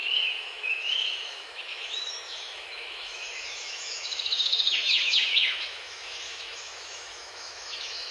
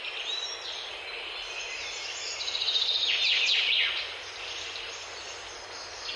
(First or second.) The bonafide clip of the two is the second